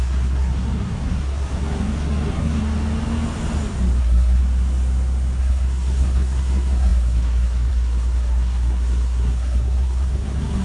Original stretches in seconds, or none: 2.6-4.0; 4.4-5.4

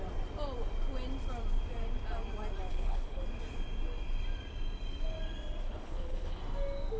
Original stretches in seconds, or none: 0.0-2.7; 3.2-5.6; 6.4-7.0

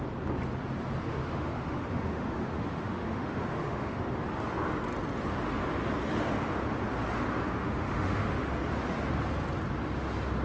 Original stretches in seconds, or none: 0.0-1.1; 4.0-7.6; 8.4-10.4

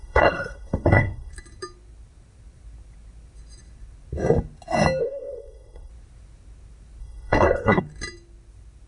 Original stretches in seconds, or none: 1.3-5.0; 5.9-7.0; 7.8-8.9